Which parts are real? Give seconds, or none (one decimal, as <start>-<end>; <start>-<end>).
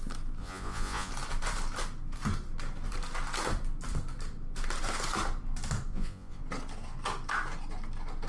0.0-0.4; 1.1-5.9; 6.4-8.3